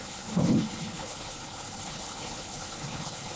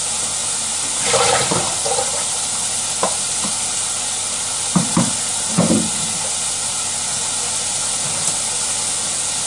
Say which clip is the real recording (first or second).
second